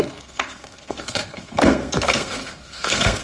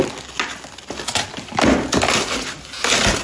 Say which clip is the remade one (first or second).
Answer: first